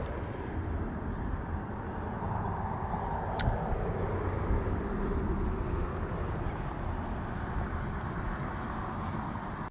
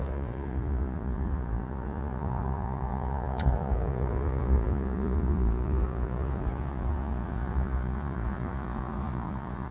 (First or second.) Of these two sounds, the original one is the first